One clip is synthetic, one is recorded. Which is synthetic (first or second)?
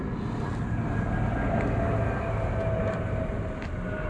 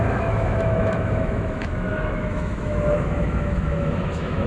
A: second